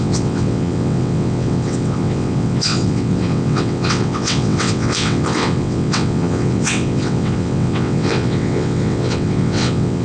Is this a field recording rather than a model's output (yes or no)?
no